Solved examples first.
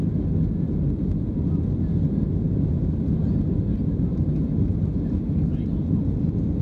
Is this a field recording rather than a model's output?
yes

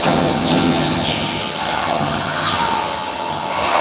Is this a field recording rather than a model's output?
no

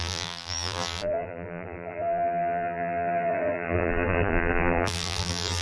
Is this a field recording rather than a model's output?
no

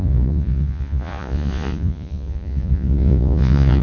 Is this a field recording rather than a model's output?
no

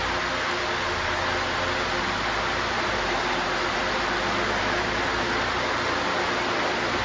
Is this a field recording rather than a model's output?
yes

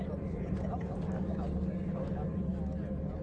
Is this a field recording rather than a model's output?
yes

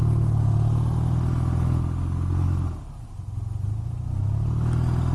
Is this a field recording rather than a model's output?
yes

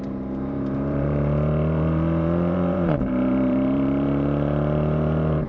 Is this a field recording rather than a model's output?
no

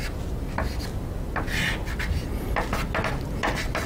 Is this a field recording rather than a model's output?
yes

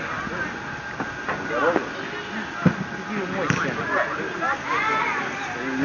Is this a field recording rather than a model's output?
yes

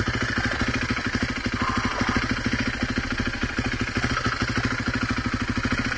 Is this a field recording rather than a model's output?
yes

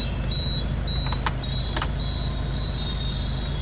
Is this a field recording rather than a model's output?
yes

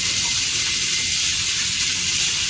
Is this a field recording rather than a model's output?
no